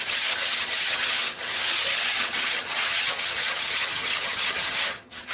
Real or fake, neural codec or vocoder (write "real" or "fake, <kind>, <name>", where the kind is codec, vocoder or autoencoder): fake, vocoder, HiFi-GAN